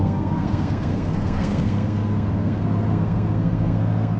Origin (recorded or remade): remade